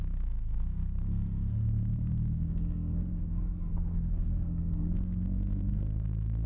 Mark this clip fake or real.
fake